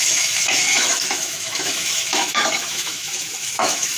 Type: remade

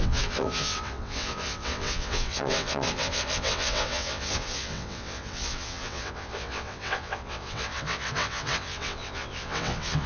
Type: remade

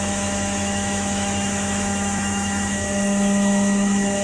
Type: remade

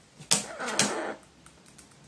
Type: recorded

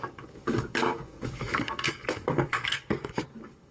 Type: remade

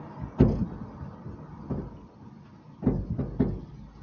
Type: recorded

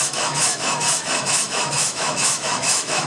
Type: remade